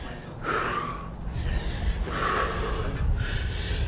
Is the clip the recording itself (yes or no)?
yes